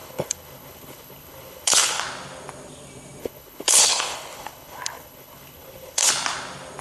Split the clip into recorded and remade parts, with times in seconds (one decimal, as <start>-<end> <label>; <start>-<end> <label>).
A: 0.0-2.0 remade; 2.0-3.2 recorded; 3.2-6.1 remade; 6.1-6.8 recorded